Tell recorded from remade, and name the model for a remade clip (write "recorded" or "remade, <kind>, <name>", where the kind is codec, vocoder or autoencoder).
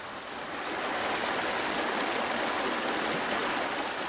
recorded